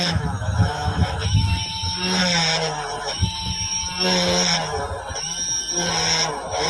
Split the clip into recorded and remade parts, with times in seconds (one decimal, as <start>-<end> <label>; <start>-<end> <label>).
0.0-2.2 remade; 2.2-3.0 recorded; 3.0-3.8 remade; 3.8-6.3 recorded; 6.3-6.7 remade